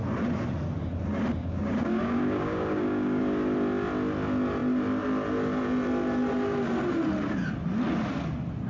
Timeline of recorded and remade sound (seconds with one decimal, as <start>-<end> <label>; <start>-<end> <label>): 0.0-1.4 recorded; 1.4-3.2 remade; 3.2-8.7 recorded